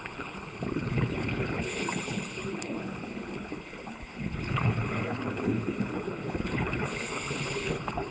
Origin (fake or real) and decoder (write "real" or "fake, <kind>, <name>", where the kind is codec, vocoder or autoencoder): fake, codec, HILCodec